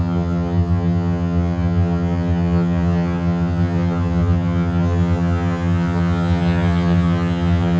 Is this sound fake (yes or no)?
yes